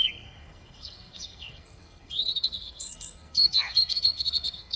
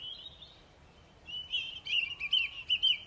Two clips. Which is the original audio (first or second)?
second